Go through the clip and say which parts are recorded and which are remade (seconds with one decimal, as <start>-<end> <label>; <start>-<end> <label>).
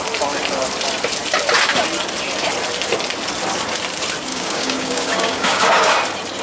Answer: 0.0-4.3 recorded; 4.3-5.9 remade; 5.9-6.4 recorded